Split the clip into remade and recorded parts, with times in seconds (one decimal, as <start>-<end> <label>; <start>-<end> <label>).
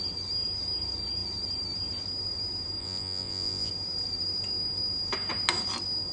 0.0-2.8 recorded; 2.8-3.7 remade; 3.7-6.1 recorded